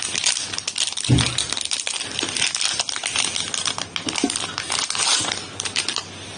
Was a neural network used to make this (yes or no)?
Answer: no